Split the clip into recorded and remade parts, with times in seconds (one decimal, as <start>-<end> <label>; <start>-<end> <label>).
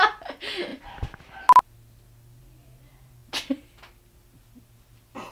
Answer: 0.0-5.3 recorded